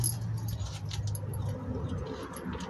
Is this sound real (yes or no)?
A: yes